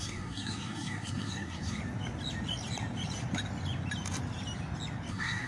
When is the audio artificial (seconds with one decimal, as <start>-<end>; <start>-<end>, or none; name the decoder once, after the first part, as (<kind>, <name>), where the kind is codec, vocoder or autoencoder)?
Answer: 0.0-1.8 (codec, SNAC); 5.1-5.5